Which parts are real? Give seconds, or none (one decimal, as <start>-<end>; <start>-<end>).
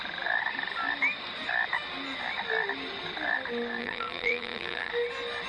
0.0-3.8; 4.9-5.5